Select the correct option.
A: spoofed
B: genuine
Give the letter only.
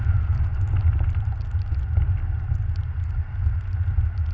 B